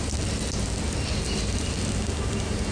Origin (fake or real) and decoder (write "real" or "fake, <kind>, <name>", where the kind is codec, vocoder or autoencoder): real